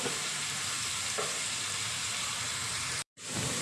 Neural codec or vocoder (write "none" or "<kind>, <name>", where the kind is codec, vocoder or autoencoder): vocoder, BigVGAN v2